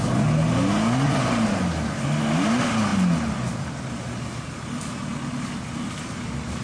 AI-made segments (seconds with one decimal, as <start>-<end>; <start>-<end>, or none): none